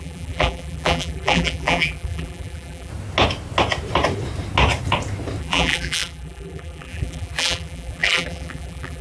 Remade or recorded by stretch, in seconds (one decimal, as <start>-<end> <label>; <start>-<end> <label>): 0.0-2.9 remade; 2.9-5.4 recorded; 5.4-9.0 remade